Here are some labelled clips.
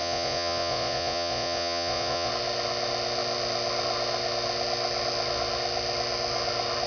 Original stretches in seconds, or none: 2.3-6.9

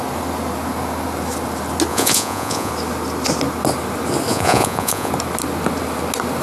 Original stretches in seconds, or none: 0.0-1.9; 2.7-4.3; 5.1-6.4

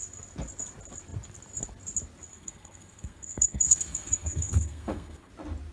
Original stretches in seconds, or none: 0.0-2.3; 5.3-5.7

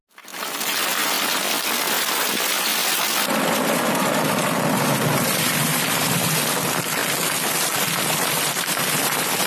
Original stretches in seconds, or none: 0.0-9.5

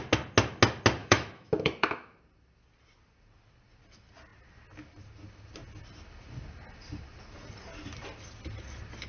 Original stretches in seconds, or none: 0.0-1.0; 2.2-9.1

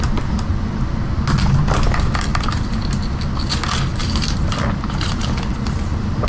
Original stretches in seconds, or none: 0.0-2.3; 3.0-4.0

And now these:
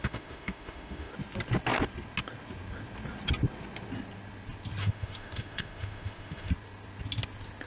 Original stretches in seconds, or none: 1.1-4.8; 6.5-7.7